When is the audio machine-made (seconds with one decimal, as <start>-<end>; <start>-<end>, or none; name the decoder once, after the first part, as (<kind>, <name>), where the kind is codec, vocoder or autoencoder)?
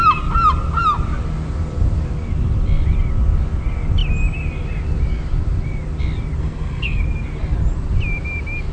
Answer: 6.4-7.0 (codec, SNAC)